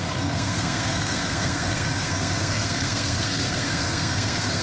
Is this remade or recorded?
remade